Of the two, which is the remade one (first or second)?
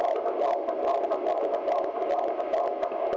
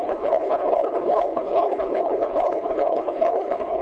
second